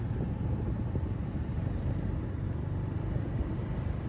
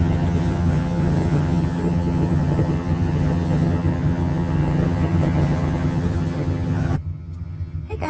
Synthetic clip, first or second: second